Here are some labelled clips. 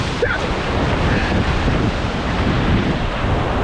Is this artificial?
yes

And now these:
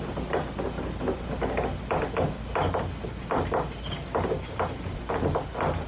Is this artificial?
no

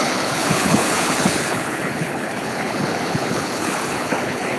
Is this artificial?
yes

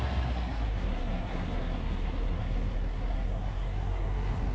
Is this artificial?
yes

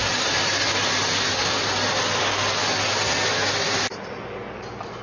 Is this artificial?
no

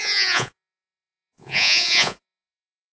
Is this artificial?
yes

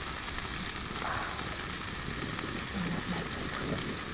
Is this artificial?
no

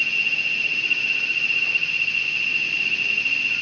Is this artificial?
no